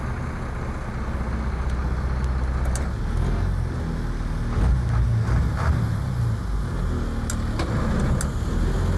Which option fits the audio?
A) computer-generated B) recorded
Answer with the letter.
B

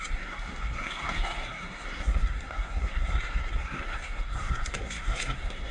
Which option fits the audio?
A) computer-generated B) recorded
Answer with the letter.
A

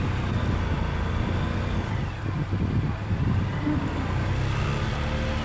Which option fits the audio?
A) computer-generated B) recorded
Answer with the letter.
B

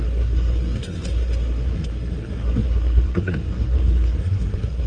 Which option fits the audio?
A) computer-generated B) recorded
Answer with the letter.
A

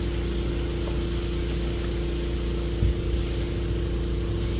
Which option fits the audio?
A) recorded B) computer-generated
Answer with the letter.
A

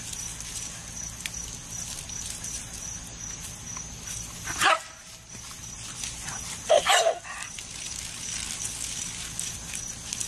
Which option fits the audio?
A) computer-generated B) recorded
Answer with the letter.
B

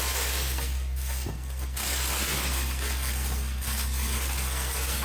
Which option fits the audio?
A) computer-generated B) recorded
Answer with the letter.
A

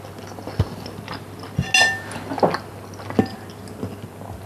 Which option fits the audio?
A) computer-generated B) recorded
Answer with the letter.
B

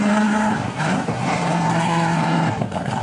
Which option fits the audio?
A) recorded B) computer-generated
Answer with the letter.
B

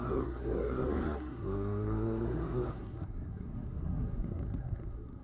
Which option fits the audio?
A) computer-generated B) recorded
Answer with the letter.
A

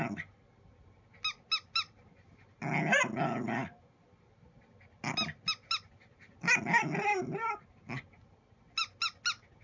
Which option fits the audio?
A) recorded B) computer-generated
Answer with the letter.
A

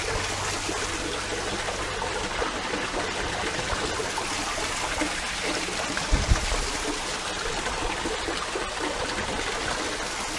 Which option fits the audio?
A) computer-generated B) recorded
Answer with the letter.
B